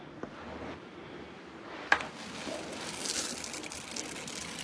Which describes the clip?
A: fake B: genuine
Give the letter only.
B